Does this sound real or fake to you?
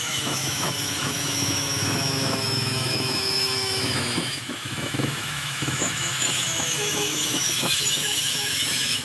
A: fake